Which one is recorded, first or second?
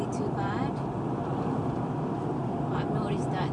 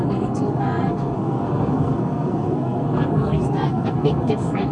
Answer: first